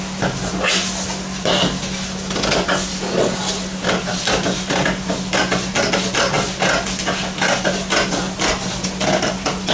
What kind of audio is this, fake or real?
real